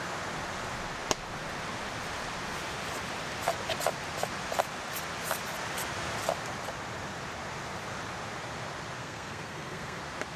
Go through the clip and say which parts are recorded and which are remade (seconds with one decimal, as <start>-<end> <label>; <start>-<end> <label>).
0.0-9.0 recorded; 9.0-10.0 remade; 10.0-10.4 recorded